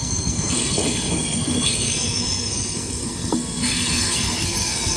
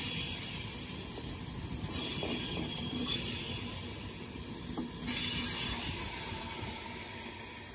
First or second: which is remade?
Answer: first